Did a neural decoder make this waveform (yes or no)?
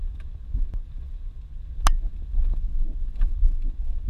no